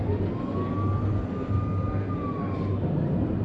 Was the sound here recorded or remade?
recorded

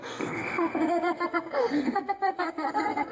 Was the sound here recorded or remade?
remade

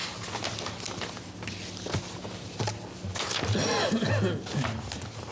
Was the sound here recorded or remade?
recorded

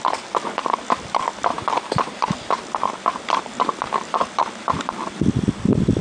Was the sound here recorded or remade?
recorded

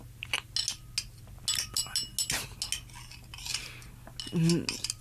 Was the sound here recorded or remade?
recorded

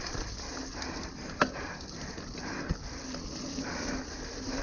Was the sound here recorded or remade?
recorded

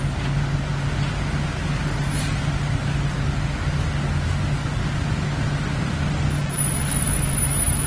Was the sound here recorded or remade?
recorded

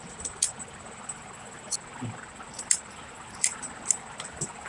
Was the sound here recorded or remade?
recorded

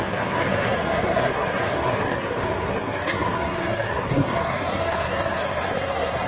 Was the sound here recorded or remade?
remade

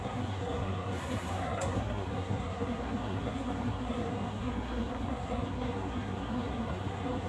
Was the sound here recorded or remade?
remade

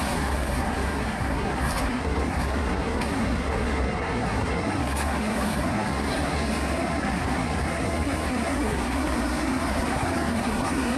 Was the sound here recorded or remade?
remade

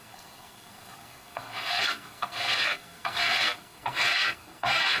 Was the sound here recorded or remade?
remade